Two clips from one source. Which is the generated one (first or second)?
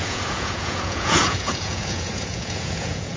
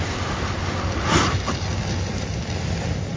first